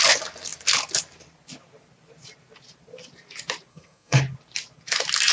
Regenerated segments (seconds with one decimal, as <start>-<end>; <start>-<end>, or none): 3.7-4.2